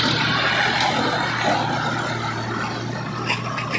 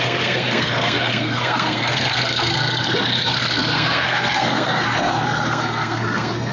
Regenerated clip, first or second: second